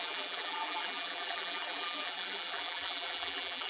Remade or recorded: remade